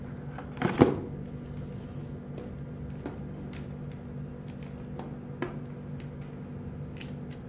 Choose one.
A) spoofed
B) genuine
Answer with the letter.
B